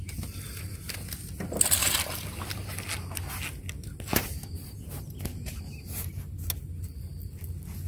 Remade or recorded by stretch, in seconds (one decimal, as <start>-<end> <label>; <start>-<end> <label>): 0.0-7.9 recorded